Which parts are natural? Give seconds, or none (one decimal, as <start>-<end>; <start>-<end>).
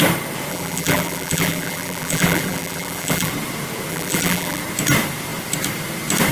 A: 0.0-0.5; 3.3-3.9; 4.6-6.3